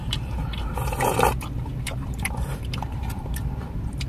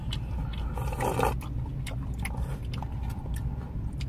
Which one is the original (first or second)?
second